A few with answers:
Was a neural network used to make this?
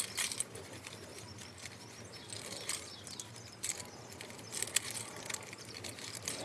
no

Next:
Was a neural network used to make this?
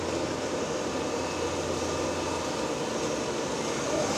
no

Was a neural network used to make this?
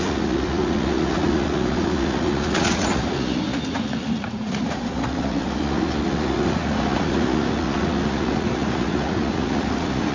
yes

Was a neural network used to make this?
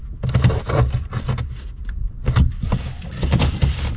no